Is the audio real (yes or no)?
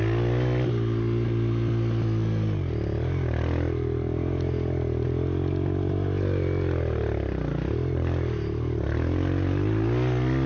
yes